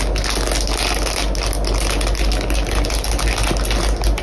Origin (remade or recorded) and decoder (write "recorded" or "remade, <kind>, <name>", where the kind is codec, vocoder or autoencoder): recorded